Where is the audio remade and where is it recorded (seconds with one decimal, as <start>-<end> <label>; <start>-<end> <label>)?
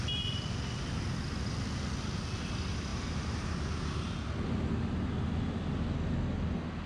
0.0-2.9 recorded; 2.9-3.5 remade; 3.5-6.9 recorded